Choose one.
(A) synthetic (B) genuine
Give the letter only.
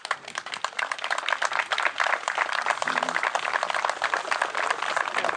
B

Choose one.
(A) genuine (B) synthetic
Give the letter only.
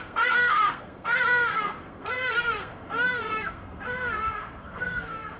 B